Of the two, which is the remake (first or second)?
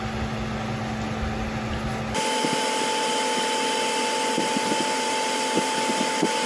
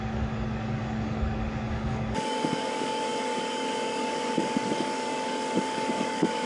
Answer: second